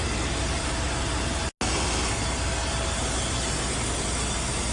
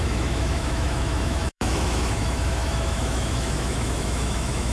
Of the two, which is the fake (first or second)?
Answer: second